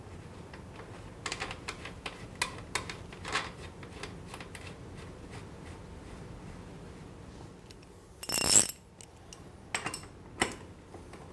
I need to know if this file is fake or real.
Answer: real